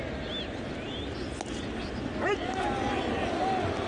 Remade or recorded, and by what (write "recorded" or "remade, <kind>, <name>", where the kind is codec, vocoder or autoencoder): recorded